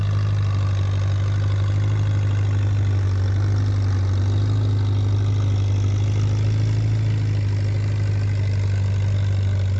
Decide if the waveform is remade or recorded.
recorded